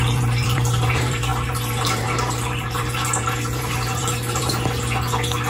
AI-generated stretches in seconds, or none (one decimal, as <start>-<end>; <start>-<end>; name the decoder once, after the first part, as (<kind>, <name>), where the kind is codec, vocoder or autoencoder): 0.0-4.4 (vocoder, BigVGAN v2)